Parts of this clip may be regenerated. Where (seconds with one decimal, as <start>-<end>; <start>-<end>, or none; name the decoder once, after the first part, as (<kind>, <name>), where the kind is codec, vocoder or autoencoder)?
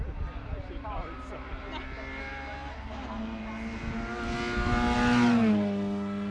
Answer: none